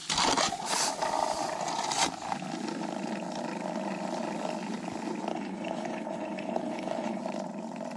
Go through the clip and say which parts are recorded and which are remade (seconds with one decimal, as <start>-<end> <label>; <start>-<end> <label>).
0.0-5.3 recorded; 5.3-7.2 remade; 7.2-8.0 recorded